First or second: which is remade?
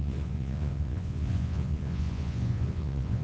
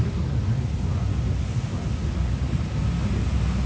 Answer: first